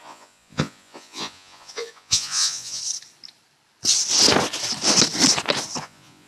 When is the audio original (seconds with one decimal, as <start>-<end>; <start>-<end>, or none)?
2.8-5.8